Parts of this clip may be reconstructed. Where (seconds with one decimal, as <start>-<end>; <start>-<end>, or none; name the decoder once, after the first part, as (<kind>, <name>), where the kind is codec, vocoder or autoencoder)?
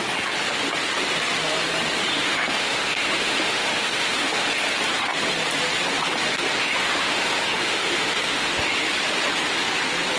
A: 2.1-4.5 (autoencoder, DAC-VAE); 6.6-8.5